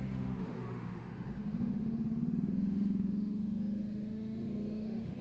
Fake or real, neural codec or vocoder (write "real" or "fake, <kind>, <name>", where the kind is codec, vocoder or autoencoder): fake, autoencoder, DAC-VAE